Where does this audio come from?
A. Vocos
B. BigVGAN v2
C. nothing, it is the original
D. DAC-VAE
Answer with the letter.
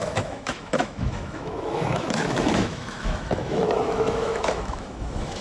D